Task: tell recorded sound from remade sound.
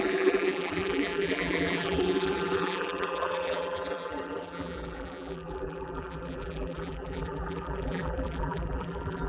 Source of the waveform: remade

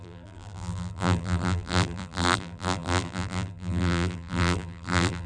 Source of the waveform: remade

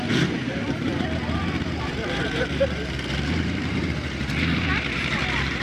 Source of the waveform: remade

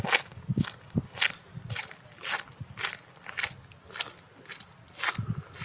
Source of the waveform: recorded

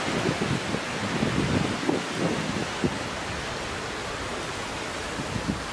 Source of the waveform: recorded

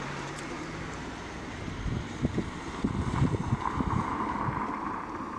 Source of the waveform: remade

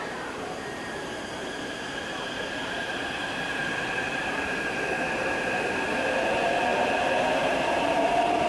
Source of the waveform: remade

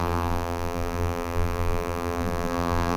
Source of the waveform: remade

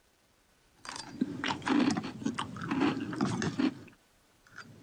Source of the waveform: recorded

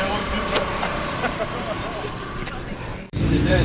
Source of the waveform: remade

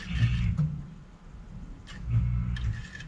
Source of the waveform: recorded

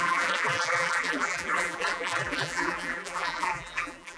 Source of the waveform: remade